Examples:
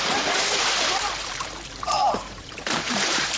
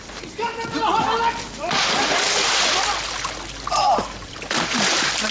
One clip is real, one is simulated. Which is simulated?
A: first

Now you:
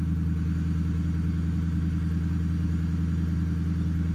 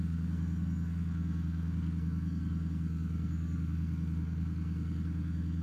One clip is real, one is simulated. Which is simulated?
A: second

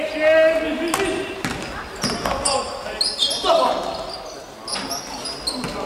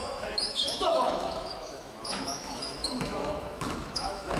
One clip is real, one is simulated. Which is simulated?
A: second